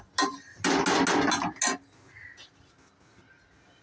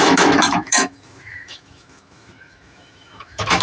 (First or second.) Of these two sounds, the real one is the first